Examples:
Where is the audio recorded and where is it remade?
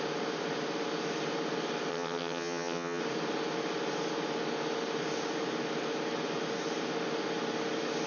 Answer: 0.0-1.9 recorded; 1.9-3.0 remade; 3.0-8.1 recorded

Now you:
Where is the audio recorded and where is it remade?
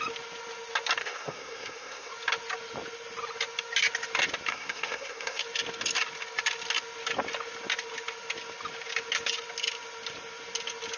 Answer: 0.0-1.0 recorded; 1.0-2.1 remade; 2.1-4.5 recorded; 4.5-5.4 remade; 5.4-11.0 recorded